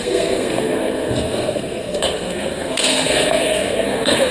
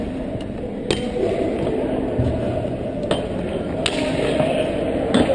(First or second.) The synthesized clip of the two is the first